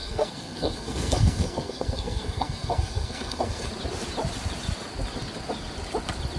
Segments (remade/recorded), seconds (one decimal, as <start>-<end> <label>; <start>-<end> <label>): 0.0-3.7 remade; 3.7-6.4 recorded